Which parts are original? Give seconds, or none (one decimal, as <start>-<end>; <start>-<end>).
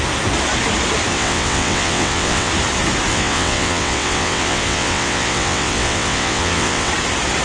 0.0-1.1; 2.5-3.1; 6.9-7.4